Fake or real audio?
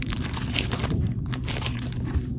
fake